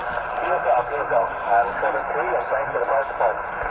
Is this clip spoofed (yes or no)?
no